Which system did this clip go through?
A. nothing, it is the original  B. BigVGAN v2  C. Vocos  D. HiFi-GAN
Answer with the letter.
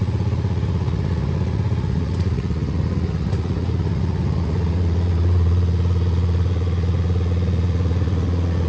C